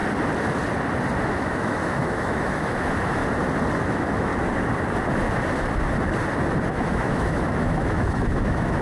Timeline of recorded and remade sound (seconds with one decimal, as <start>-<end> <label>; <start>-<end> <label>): 0.0-1.3 recorded; 1.3-3.2 remade; 3.2-3.8 recorded; 3.8-4.3 remade; 4.3-6.7 recorded; 6.7-8.8 remade